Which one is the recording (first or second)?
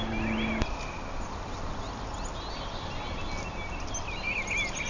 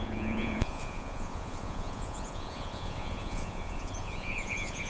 first